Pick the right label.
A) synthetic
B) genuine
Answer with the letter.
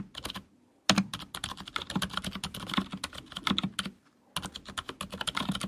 B